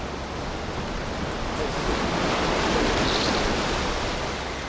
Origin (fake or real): real